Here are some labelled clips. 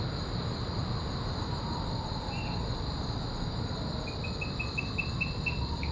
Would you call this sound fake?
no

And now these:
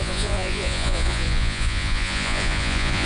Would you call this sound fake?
yes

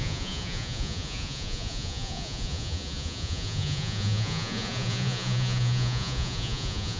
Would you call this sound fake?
yes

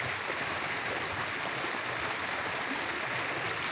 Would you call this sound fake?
no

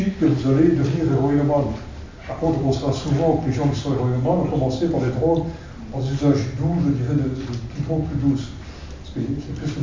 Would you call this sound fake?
no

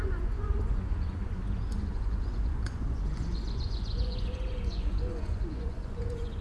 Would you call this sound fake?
yes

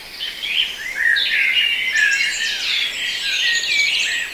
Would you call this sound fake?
no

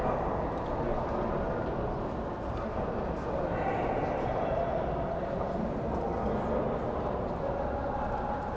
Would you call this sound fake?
no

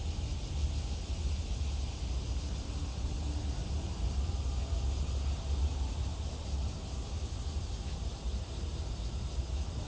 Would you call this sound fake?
no